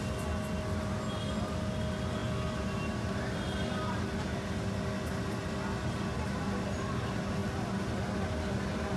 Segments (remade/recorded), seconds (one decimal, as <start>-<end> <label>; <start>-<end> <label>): 0.0-9.0 recorded